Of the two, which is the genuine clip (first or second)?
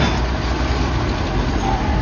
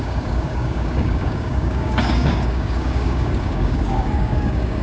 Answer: first